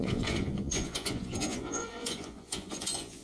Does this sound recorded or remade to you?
remade